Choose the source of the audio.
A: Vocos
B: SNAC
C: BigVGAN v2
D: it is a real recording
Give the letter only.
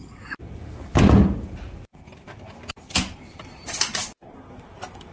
D